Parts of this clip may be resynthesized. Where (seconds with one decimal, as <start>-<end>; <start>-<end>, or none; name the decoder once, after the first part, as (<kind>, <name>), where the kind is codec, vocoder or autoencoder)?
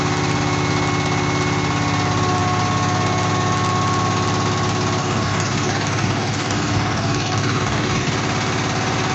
5.0-8.1 (codec, DAC)